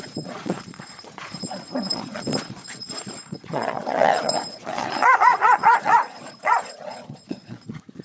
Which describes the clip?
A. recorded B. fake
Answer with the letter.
B